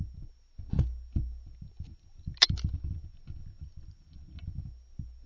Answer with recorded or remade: recorded